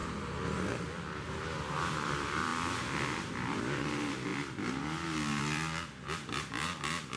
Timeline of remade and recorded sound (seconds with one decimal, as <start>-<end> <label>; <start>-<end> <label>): 0.0-1.7 recorded; 1.7-4.3 remade; 4.3-5.4 recorded; 5.4-7.2 remade